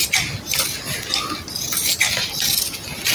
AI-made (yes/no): no